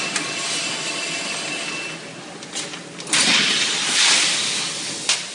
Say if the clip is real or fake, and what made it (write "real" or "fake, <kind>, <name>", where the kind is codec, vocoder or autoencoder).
real